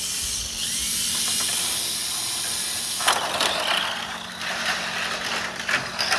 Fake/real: real